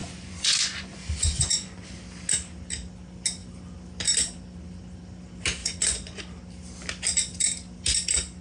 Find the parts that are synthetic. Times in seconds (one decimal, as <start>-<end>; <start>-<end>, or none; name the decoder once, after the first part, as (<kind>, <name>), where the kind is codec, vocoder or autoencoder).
0.0-2.0 (vocoder, Vocos); 5.6-6.2